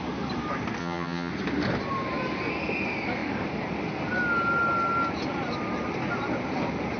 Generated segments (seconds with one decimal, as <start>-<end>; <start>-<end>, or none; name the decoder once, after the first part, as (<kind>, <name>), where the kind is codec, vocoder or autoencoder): 0.8-1.3 (vocoder, HiFi-GAN)